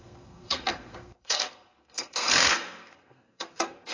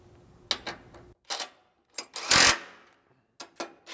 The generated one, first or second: first